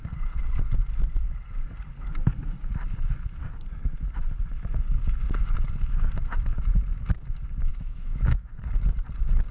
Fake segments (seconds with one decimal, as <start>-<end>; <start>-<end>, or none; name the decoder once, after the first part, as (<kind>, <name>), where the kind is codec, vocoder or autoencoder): 7.7-8.5 (autoencoder, DAC-VAE)